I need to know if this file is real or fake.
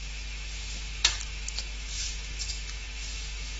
fake